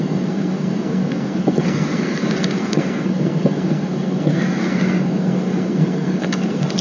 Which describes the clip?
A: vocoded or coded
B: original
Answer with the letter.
A